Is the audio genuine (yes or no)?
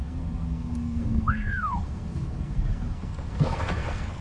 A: no